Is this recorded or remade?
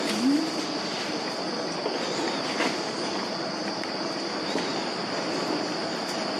recorded